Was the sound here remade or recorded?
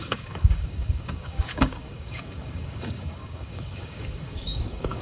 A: remade